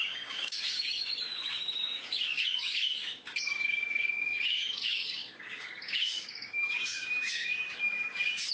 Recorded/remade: remade